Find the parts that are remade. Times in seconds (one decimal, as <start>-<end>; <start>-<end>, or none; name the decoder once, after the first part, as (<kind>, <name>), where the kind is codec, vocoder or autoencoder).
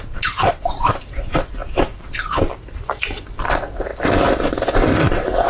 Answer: 0.0-1.6 (vocoder, BigVGAN v2); 3.4-3.9; 5.1-5.5